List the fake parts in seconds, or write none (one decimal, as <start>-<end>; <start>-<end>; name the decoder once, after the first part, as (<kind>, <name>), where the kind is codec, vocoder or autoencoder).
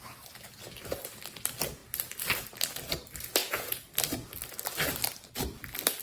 3.4-3.9 (vocoder, Vocos)